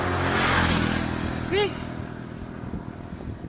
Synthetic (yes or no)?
no